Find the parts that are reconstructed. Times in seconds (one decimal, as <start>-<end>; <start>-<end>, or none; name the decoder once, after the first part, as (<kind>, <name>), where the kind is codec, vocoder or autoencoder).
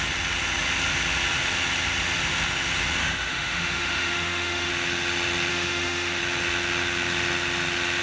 3.0-4.7 (autoencoder, DAC-VAE); 5.5-6.2